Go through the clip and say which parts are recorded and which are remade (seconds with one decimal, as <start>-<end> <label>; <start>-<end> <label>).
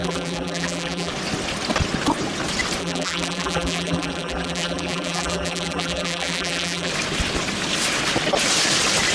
0.0-1.1 remade; 1.1-2.8 recorded; 2.8-6.9 remade; 6.9-9.1 recorded